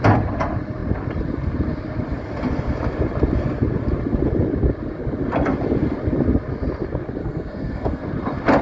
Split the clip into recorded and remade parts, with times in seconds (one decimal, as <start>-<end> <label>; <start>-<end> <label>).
0.0-7.2 recorded; 7.2-8.0 remade; 8.0-8.6 recorded